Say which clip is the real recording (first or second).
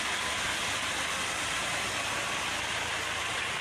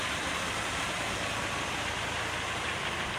first